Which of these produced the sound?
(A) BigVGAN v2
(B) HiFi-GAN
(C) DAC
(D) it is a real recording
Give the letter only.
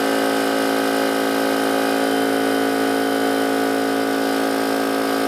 D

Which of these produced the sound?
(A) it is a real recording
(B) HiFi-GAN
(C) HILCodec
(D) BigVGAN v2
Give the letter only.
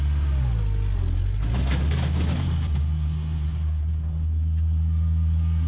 A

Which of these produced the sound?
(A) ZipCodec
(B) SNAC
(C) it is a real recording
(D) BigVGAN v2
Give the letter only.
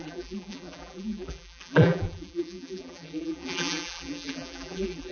D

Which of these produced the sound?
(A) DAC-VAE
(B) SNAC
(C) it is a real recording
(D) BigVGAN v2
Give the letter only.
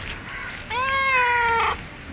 C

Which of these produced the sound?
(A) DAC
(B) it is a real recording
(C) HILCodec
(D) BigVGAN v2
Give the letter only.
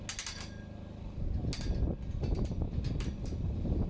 B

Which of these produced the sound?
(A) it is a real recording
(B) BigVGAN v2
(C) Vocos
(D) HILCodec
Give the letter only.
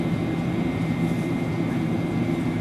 B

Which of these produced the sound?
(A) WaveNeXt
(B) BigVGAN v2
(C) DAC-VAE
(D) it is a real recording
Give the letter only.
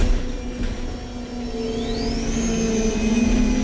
D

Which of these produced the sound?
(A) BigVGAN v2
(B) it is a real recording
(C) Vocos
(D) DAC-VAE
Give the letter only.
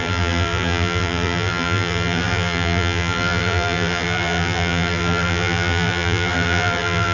A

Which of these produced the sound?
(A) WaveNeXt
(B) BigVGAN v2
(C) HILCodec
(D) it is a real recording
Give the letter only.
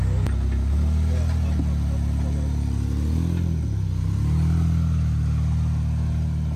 D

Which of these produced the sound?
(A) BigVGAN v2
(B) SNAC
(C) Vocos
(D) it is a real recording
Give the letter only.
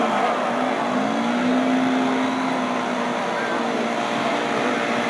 D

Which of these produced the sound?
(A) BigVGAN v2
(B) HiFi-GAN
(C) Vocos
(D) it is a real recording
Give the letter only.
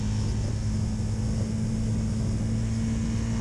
D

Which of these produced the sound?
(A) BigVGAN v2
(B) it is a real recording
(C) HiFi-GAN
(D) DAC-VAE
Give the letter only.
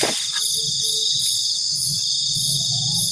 B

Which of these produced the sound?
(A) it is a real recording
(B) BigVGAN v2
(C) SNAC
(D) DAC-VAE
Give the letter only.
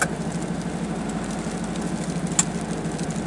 A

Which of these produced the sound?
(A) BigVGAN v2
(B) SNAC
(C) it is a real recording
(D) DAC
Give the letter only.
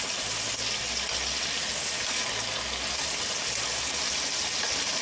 C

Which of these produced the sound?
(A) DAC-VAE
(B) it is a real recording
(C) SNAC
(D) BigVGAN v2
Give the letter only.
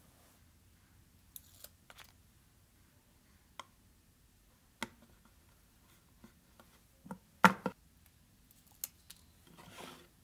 B